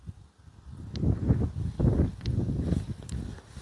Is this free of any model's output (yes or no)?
yes